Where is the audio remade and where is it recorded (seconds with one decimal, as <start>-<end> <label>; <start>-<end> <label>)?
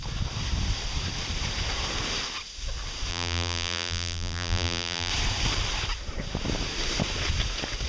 0.0-3.1 recorded; 3.1-5.1 remade; 5.1-7.9 recorded